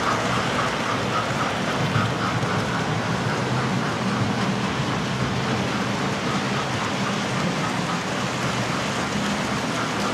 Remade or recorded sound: recorded